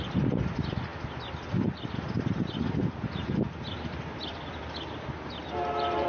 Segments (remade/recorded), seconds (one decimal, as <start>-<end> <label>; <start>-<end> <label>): 0.0-6.1 recorded